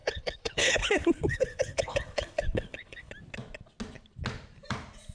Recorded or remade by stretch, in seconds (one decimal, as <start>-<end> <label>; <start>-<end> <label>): 0.0-3.1 remade; 3.1-5.1 recorded